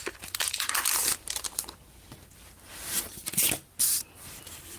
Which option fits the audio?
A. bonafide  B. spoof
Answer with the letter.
A